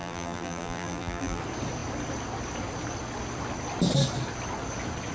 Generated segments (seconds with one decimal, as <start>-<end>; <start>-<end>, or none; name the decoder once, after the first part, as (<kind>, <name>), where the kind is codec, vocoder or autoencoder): 0.0-1.4 (vocoder, BigVGAN v2)